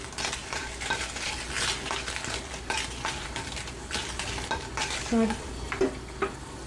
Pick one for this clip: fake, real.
real